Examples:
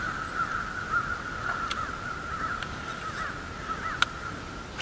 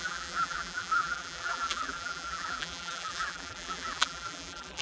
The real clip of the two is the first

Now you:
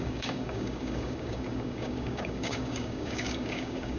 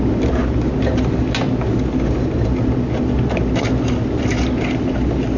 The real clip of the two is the second